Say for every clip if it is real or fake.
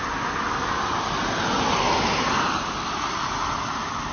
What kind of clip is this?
real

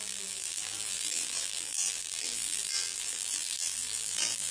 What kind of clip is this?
fake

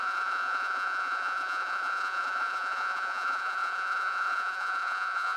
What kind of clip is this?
fake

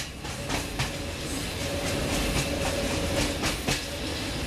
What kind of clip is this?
real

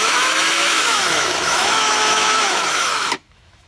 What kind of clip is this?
fake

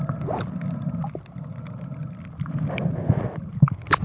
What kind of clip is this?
real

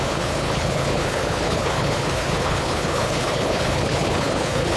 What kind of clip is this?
fake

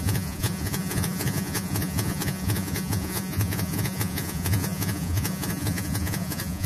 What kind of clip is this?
fake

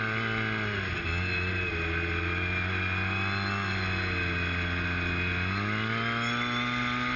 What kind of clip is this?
real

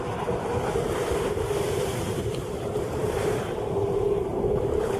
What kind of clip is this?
fake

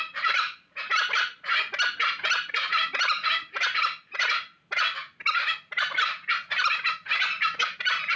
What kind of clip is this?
real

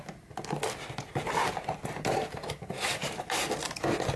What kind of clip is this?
real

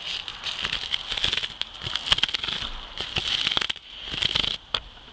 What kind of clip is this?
real